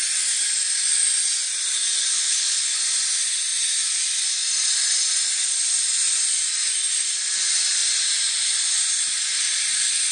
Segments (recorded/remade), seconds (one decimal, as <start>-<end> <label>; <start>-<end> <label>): 0.0-2.1 recorded; 2.1-2.8 remade; 2.8-10.1 recorded